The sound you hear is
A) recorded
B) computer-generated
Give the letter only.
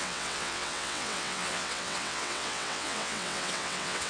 B